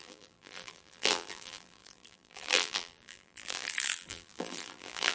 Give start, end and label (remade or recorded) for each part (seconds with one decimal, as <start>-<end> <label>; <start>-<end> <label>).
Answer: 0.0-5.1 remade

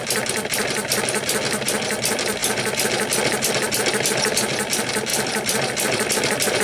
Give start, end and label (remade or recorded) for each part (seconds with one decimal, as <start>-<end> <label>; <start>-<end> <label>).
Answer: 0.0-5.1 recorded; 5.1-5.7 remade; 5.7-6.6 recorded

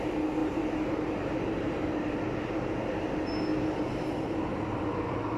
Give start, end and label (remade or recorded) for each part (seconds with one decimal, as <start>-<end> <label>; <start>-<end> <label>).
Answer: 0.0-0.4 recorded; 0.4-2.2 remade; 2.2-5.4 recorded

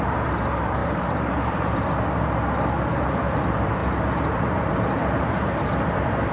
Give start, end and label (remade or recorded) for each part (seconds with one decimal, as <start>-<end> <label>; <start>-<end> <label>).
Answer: 0.0-6.3 remade